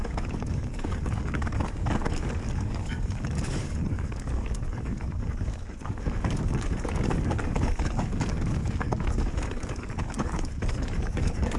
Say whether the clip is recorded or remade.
remade